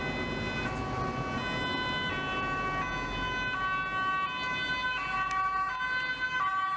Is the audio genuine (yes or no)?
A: yes